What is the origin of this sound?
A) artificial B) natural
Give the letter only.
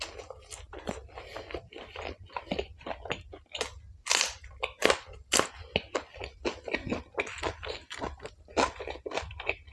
B